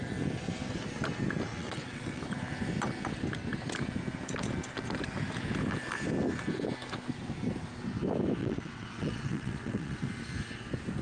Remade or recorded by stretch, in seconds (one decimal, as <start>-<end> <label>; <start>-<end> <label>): 0.0-1.5 recorded; 1.5-2.2 remade; 2.2-8.4 recorded; 8.4-10.1 remade; 10.1-11.0 recorded